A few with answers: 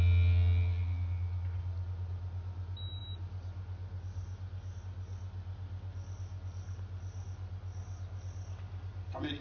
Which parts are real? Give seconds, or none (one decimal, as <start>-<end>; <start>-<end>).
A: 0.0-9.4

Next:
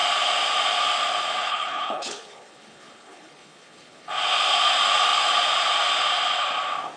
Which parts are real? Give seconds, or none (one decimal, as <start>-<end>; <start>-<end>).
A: 0.0-1.5; 4.1-7.0

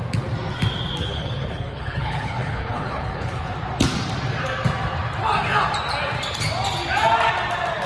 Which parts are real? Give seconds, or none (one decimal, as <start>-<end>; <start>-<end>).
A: 0.0-1.0; 3.5-7.9

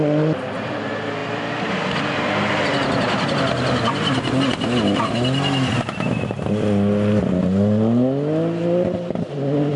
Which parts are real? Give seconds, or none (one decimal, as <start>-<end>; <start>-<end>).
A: 0.0-9.8

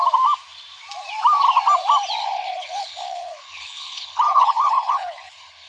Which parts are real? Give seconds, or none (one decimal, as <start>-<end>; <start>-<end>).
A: 0.0-2.2

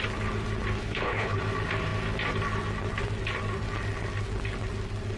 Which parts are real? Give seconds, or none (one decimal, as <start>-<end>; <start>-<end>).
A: 0.0-0.8; 1.4-5.2

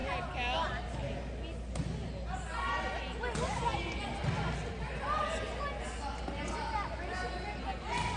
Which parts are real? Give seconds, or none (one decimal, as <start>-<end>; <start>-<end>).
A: 0.0-8.2